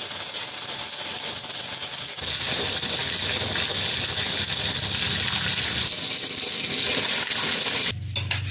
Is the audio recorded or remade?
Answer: recorded